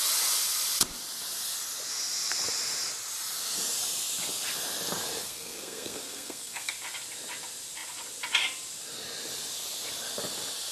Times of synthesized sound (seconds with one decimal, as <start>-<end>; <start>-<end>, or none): 5.2-6.7